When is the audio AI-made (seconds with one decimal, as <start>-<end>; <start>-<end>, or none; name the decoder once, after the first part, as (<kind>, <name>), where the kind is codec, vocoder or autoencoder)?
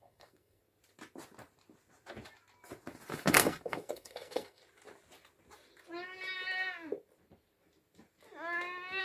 0.0-0.6 (codec, SNAC); 3.2-4.6